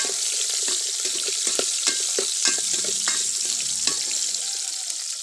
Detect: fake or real real